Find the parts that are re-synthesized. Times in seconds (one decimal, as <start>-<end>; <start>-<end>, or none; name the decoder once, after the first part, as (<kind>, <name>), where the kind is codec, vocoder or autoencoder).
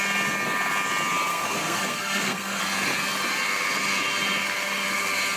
1.3-2.6 (codec, SNAC)